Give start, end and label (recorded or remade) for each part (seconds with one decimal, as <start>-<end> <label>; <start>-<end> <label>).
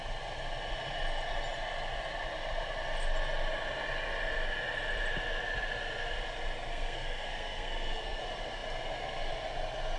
0.0-6.7 recorded; 6.7-8.2 remade; 8.2-10.0 recorded